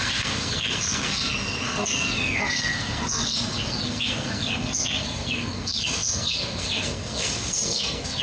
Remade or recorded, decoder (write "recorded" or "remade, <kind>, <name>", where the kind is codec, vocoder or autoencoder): remade, codec, SNAC